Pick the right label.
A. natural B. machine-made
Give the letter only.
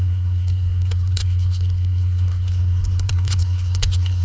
B